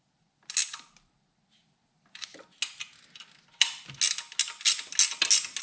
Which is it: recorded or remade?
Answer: recorded